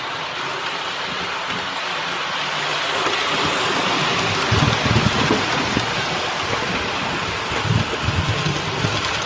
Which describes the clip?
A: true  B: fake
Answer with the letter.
A